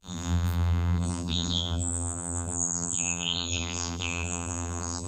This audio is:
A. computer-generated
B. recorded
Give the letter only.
A